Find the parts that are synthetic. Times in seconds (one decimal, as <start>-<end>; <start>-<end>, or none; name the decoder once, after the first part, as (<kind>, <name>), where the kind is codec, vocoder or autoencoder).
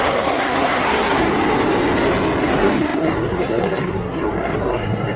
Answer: 0.0-1.3 (codec, SNAC); 2.4-5.2